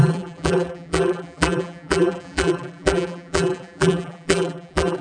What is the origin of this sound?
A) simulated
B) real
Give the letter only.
A